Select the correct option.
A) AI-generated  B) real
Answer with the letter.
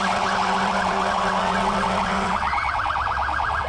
A